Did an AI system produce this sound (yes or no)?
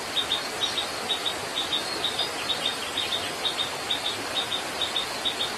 no